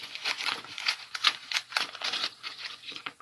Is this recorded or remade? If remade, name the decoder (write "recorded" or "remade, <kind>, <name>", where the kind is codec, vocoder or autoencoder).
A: remade, vocoder, Vocos